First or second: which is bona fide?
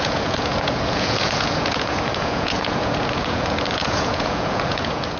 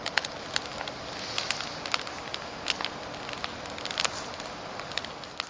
second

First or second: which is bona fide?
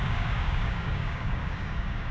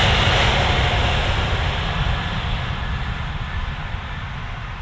second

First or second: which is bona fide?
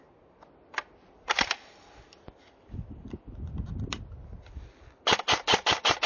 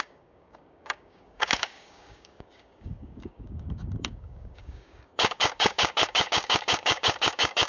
first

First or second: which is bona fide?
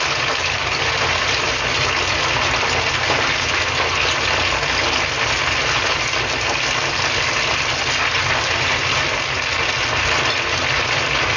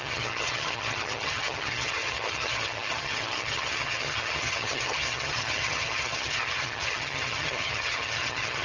first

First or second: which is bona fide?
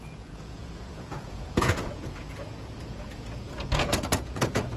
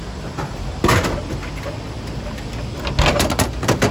second